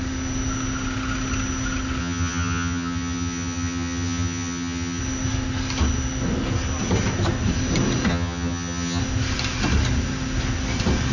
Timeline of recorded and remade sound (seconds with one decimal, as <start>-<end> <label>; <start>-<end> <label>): 0.0-2.0 recorded; 2.0-5.0 remade; 5.0-8.1 recorded; 8.1-9.0 remade; 9.0-11.1 recorded